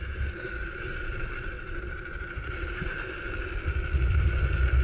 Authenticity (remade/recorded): recorded